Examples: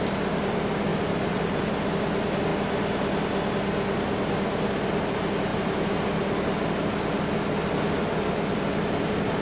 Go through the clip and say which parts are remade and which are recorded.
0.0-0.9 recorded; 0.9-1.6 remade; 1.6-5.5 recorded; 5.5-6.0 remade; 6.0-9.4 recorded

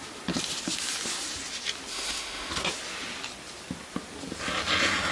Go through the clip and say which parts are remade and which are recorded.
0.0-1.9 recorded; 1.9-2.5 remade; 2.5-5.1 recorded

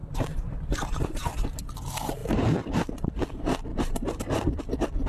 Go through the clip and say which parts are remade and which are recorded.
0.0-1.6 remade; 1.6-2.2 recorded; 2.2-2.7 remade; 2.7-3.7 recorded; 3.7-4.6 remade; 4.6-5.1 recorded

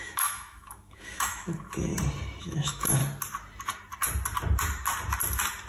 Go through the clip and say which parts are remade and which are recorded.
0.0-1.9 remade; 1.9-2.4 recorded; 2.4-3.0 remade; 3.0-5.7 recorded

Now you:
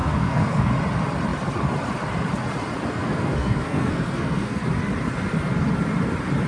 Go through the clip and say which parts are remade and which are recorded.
0.0-0.7 remade; 0.7-2.9 recorded; 2.9-4.6 remade; 4.6-6.5 recorded